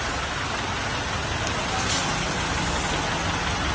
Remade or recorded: recorded